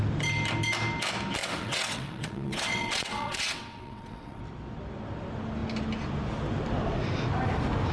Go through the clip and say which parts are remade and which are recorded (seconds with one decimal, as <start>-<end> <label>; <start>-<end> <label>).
0.0-1.4 recorded; 1.4-4.4 remade; 4.4-7.9 recorded